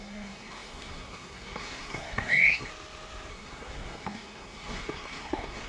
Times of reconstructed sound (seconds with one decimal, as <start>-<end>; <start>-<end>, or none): 0.0-2.7; 3.3-5.7